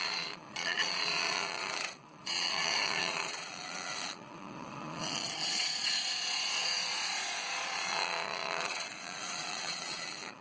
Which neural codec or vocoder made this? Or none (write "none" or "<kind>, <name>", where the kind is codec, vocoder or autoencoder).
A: vocoder, Vocos